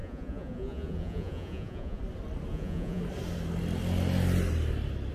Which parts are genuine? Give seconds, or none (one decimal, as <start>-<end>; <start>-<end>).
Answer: 2.0-2.5; 3.0-5.1